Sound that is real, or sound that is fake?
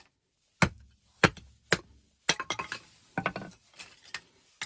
real